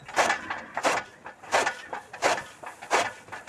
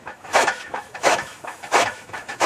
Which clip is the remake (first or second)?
second